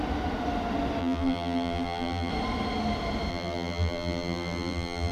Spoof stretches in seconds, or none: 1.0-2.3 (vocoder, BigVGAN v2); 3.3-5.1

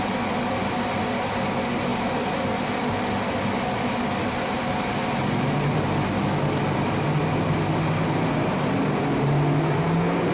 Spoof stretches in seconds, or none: none

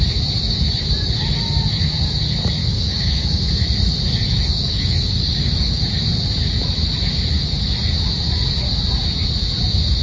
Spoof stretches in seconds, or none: 2.6-3.4 (codec, DAC); 4.2-5.8

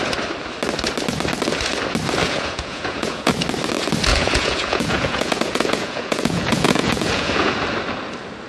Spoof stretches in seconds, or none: 2.2-3.3 (vocoder, Vocos); 4.1-7.5

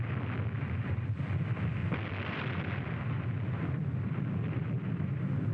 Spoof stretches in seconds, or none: 1.8-5.1 (vocoder, BigVGAN v2)

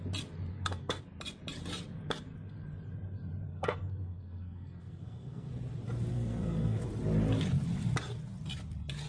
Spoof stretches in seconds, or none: 0.5-1.0 (codec, SNAC); 3.5-5.5; 6.1-6.8

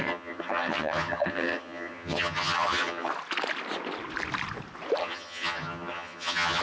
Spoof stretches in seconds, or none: 0.0-3.1 (vocoder, HiFi-GAN); 5.0-6.6

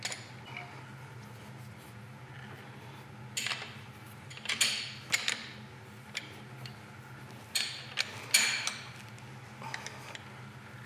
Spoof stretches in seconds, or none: none